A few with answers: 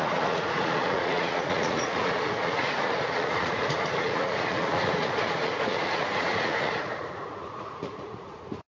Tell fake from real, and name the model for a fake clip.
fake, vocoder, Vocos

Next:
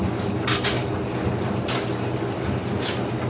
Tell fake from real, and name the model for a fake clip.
real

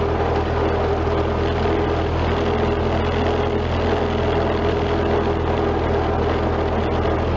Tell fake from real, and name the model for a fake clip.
real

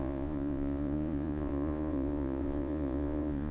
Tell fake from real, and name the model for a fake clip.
fake, vocoder, Vocos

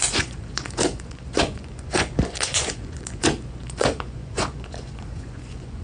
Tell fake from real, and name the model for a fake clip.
fake, vocoder, Vocos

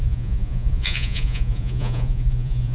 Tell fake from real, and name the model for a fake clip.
fake, vocoder, Vocos